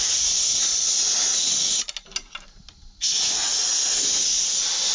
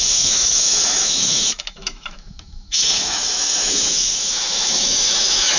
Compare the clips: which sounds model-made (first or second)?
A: second